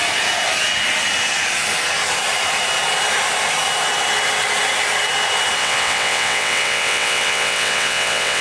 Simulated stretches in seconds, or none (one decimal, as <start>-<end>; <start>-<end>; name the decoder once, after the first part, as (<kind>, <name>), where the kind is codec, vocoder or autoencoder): 5.6-8.4 (vocoder, WaveNeXt)